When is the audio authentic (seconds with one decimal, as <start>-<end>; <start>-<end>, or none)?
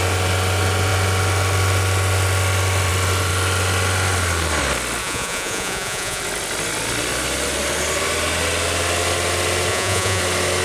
0.0-5.0; 6.2-9.7; 10.2-10.6